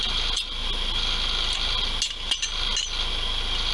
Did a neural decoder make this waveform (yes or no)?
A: no